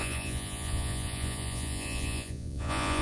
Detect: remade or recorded remade